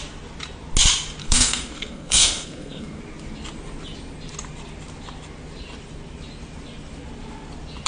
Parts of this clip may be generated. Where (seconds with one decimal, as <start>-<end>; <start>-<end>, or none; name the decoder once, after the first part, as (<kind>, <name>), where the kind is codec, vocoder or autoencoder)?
1.2-3.0 (codec, SNAC)

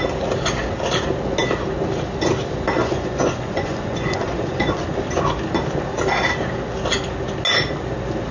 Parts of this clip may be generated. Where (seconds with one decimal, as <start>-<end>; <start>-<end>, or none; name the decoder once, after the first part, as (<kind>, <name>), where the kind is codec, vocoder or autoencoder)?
2.8-4.8 (vocoder, Vocos)

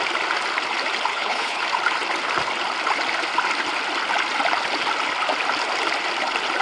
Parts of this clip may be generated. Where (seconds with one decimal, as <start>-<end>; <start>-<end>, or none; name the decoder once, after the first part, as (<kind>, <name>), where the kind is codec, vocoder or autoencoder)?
1.1-1.6 (codec, HILCodec)

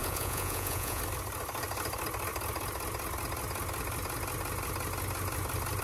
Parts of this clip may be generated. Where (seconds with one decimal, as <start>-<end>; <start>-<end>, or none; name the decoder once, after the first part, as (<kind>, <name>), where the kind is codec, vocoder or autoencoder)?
0.0-1.0 (vocoder, Vocos)

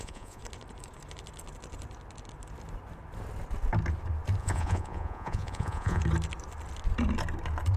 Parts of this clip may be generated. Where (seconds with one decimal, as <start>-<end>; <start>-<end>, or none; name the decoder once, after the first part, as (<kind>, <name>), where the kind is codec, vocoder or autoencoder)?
0.0-0.4 (vocoder, Vocos); 4.4-6.0

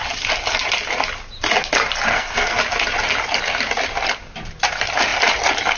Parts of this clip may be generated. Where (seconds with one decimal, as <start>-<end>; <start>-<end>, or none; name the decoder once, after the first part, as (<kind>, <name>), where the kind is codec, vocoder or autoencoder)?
2.1-2.6 (codec, SNAC)

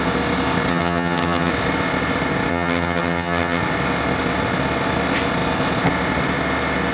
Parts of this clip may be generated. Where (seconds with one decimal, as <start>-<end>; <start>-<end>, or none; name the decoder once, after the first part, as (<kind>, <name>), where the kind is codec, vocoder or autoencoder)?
0.7-1.5 (vocoder, HiFi-GAN); 2.5-3.6